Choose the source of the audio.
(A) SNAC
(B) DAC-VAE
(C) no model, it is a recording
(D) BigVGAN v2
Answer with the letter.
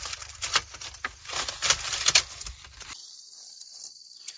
D